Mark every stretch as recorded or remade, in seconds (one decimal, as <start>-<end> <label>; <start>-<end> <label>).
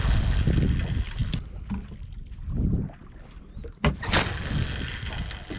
0.0-5.6 recorded